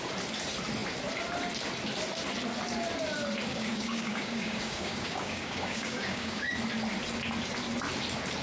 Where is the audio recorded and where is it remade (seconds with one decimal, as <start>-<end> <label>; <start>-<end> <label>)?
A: 0.0-3.5 recorded; 3.5-6.5 remade; 6.5-8.4 recorded